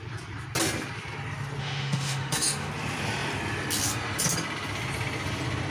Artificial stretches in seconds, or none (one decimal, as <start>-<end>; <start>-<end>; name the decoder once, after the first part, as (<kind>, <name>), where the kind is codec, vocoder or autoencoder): 1.6-2.7 (autoencoder, DAC-VAE)